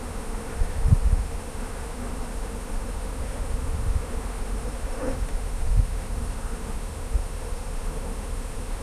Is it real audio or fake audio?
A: fake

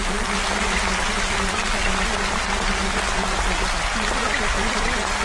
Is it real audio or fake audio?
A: real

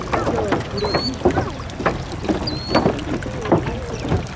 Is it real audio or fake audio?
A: real